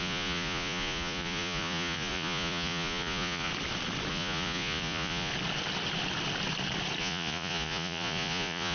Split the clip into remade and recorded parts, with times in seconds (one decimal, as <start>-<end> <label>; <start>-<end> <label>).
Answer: 0.0-3.5 remade; 3.5-4.1 recorded; 4.1-5.3 remade; 5.3-7.0 recorded; 7.0-8.7 remade